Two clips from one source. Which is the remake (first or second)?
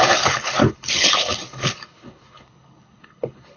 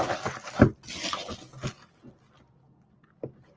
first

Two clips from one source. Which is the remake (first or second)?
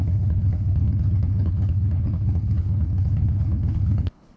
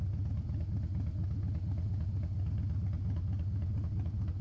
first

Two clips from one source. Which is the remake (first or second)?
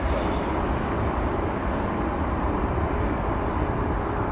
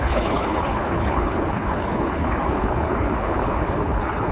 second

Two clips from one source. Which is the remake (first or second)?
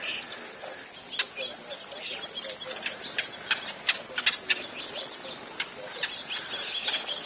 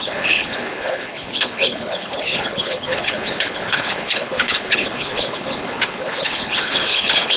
second